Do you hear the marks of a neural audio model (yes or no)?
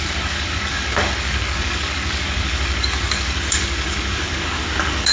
yes